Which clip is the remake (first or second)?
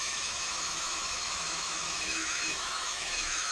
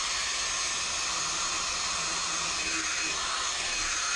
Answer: first